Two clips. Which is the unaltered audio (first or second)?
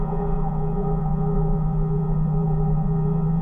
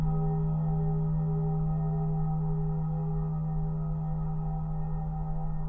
second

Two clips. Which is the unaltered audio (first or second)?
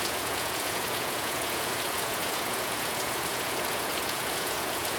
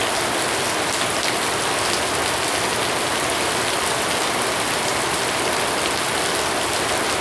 second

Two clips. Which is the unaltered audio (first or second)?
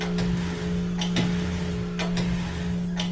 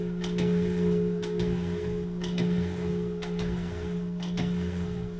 first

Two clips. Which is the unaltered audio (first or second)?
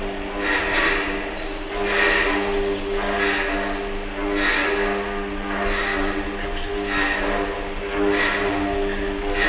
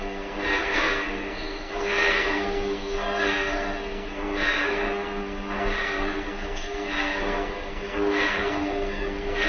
first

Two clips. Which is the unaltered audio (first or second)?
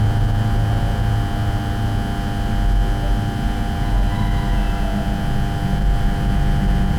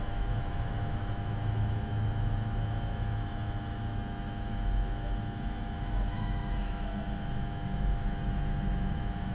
first